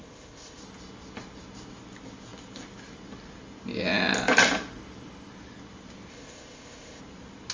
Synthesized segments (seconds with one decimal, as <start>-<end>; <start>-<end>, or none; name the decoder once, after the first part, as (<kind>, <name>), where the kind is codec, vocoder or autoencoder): 0.0-0.6 (codec, ZipCodec); 6.1-7.0